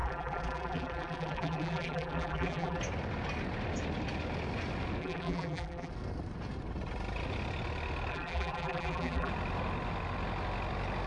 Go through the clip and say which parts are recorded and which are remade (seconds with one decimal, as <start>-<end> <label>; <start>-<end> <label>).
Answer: 0.0-2.8 remade; 2.8-5.0 recorded; 5.0-5.9 remade; 5.9-8.1 recorded; 8.1-9.3 remade; 9.3-11.1 recorded